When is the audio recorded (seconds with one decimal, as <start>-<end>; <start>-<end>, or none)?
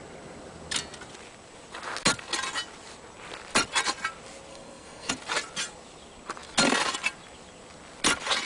0.0-4.5; 5.1-8.4